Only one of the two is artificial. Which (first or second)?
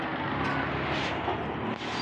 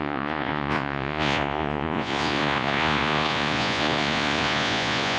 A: second